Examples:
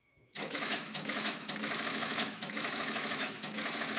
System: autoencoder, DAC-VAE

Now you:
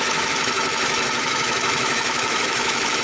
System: autoencoder, DAC-VAE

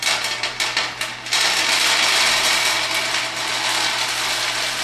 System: none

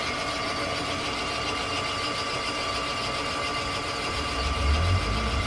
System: none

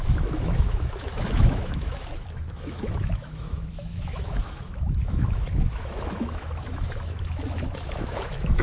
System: autoencoder, DAC-VAE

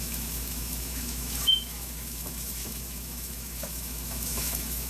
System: autoencoder, DAC-VAE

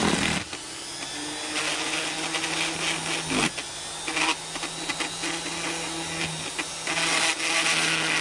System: none